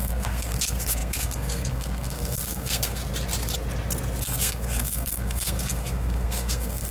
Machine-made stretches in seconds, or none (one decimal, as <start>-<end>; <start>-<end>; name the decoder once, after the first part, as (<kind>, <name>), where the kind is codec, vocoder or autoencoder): 0.0-3.0 (codec, SNAC); 4.2-6.9